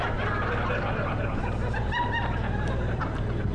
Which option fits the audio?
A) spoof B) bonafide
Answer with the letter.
A